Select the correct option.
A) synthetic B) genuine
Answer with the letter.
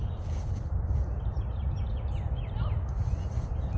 B